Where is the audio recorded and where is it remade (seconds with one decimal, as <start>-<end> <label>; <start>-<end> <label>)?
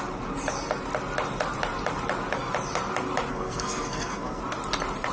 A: 0.0-3.3 recorded; 3.3-4.4 remade; 4.4-5.1 recorded